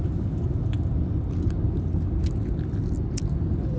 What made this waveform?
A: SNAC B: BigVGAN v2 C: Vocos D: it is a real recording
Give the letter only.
D